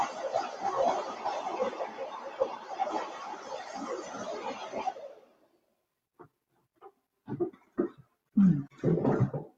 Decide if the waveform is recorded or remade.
recorded